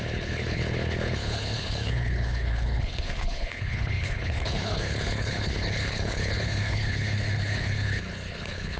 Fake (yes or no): yes